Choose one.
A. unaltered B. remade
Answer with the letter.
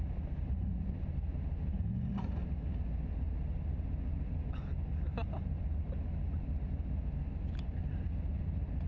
A